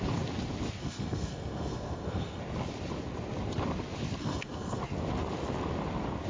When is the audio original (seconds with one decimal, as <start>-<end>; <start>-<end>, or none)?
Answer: 0.0-0.8; 2.4-4.2; 4.8-6.3